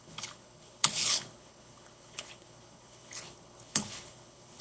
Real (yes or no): no